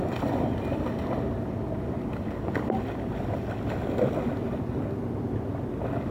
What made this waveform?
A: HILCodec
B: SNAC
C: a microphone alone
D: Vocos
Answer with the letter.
C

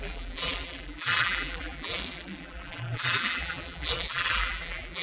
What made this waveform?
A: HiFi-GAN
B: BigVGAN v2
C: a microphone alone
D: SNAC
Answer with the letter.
B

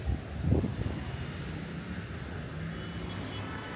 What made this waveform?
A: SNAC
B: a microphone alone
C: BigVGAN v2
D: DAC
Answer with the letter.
B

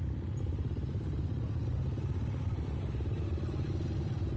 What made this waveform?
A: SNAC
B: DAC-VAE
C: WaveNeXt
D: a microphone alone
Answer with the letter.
D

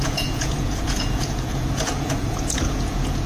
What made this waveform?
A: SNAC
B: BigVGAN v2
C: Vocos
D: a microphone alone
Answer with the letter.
C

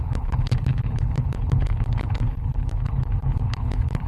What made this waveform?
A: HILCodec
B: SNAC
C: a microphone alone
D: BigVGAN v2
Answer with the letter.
A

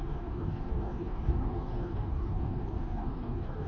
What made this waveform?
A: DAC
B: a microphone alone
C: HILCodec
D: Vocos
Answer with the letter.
A